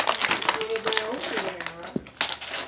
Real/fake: real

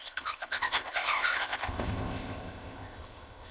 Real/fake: fake